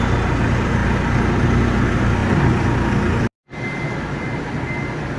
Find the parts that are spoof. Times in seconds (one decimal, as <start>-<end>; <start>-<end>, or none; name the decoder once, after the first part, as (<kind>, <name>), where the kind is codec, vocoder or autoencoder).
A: none